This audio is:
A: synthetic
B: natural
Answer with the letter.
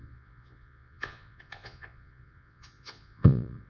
A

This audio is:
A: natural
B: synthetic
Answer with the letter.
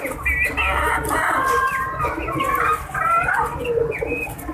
A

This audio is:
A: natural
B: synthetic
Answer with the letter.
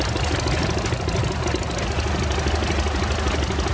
A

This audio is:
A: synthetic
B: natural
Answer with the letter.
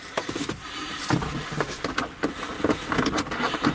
B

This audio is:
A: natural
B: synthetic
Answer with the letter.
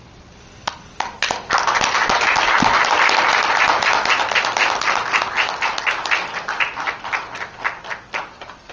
A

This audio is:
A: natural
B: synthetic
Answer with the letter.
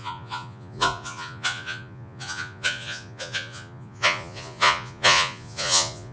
B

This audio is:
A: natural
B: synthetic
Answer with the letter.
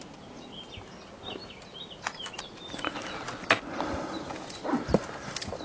A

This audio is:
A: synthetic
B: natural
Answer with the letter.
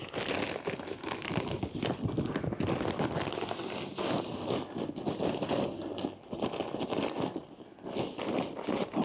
B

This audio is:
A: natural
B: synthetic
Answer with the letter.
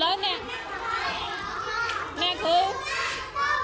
A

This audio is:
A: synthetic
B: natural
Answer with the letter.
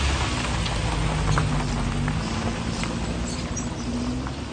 B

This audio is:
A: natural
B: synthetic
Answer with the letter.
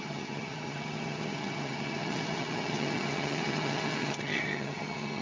B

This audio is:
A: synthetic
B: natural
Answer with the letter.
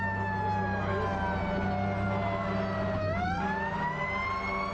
B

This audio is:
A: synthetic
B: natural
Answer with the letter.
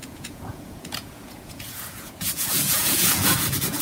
A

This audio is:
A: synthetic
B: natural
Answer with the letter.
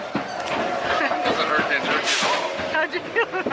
B